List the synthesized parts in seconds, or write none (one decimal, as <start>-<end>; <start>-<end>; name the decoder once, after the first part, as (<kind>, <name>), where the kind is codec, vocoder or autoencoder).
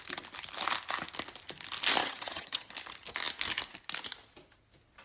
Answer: 2.0-2.7 (vocoder, HiFi-GAN)